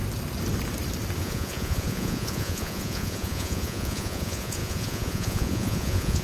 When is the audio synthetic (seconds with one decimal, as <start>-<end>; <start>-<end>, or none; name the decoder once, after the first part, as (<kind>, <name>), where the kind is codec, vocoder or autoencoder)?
1.2-6.2 (vocoder, Vocos)